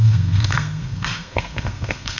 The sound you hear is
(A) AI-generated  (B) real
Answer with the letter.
A